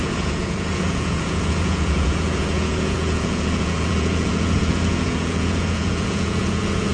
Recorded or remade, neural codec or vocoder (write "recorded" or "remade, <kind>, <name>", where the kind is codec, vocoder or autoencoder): remade, vocoder, Vocos